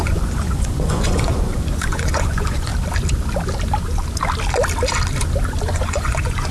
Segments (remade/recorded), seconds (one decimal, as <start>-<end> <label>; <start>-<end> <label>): 0.0-2.7 remade; 2.7-5.7 recorded; 5.7-6.5 remade